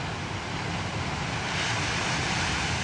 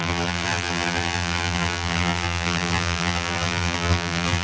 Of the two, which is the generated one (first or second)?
second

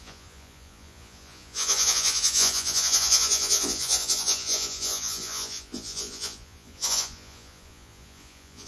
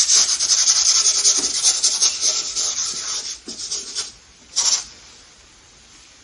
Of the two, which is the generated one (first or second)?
first